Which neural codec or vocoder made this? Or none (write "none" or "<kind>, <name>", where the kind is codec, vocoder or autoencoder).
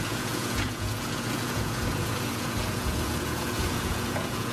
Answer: vocoder, Vocos